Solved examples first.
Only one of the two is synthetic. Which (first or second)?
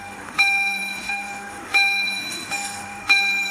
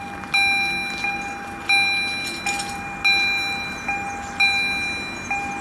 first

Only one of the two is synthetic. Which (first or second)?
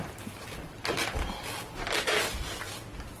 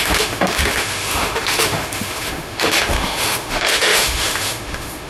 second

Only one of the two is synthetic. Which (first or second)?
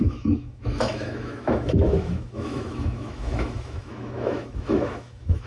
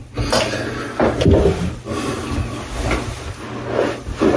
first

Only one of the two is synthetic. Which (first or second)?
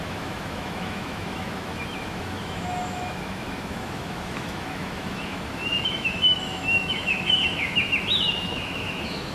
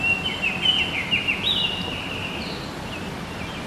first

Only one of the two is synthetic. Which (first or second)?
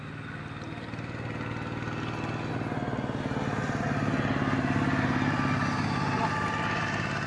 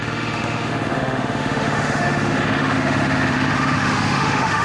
second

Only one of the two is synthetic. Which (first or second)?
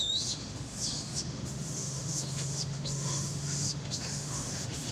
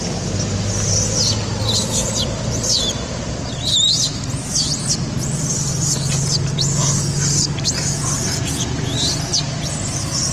first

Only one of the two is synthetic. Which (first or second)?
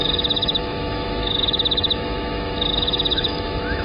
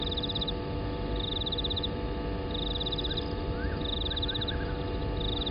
first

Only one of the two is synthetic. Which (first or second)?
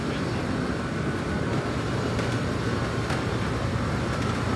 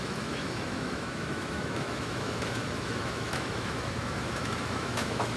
second